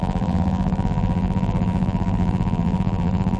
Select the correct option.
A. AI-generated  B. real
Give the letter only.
A